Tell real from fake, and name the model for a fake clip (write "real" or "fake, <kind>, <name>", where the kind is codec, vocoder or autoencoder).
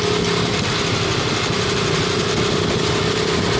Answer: real